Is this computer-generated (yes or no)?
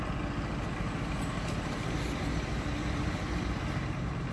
no